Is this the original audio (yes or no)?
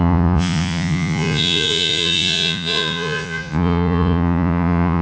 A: no